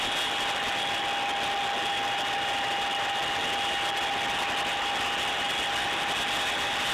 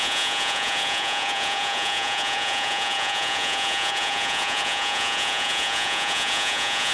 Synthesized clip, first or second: second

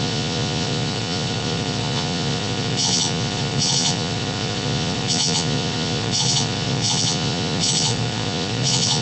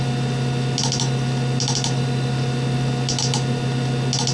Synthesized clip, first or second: first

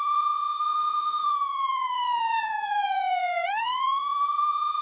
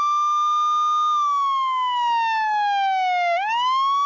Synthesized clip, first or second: first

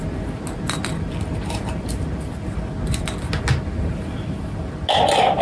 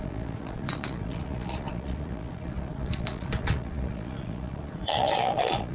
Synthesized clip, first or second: second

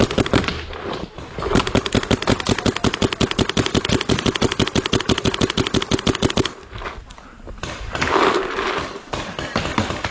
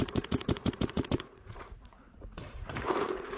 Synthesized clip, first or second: second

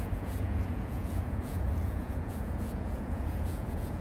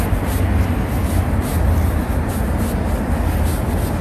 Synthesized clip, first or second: first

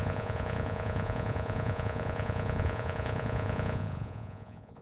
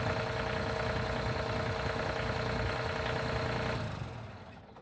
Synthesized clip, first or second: first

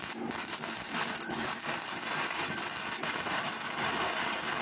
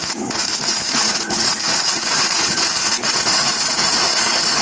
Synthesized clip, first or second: second